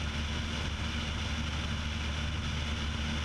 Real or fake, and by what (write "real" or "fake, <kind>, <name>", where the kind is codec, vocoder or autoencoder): real